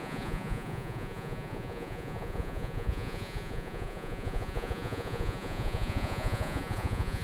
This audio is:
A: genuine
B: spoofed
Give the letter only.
B